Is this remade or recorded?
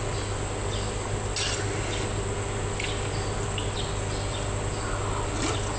recorded